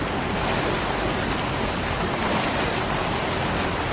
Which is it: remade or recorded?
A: recorded